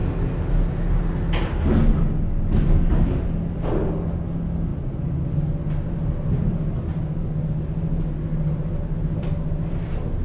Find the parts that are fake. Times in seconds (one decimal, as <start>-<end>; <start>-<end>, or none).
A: none